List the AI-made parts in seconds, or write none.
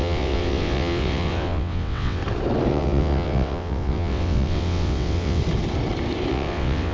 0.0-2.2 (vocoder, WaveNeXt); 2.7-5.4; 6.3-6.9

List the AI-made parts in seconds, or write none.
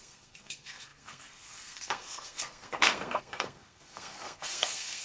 0.0-5.0 (codec, SNAC)